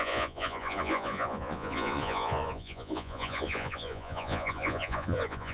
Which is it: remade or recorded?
remade